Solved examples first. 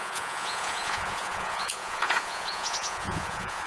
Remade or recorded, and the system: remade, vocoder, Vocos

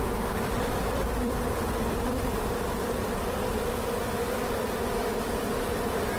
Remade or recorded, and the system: remade, vocoder, BigVGAN v2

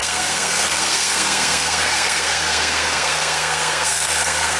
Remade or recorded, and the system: remade, codec, SNAC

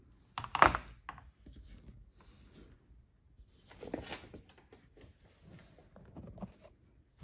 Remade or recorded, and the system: recorded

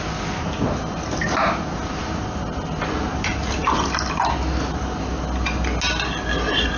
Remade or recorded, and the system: recorded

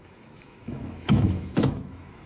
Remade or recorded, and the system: remade, autoencoder, DAC-VAE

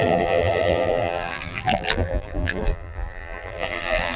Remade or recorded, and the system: remade, vocoder, BigVGAN v2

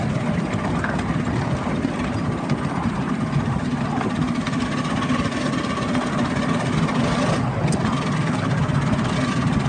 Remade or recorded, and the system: recorded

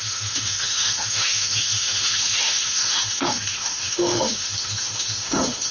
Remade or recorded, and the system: remade, autoencoder, DAC-VAE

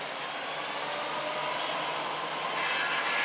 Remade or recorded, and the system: recorded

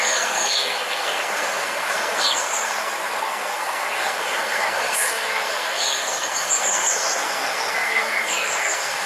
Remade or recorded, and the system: remade, codec, SNAC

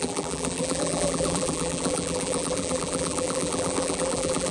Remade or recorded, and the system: remade, vocoder, BigVGAN v2